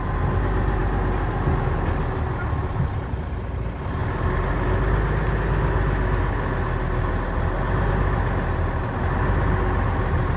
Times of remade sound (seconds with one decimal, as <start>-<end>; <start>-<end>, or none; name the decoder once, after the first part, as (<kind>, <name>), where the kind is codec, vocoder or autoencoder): none